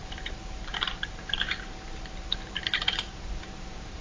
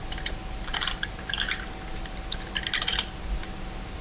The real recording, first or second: second